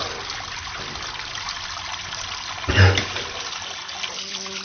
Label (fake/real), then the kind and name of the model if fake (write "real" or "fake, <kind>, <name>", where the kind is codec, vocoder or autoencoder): real